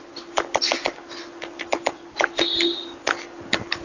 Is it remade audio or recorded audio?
recorded